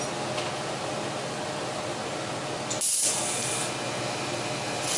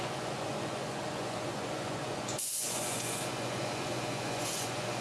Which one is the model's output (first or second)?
second